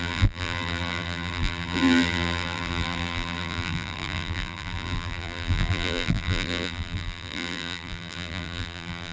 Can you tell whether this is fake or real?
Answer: fake